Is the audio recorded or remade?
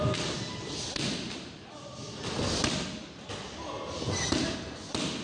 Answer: recorded